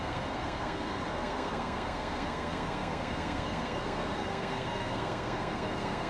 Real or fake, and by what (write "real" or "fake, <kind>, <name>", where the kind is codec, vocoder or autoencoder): fake, codec, SNAC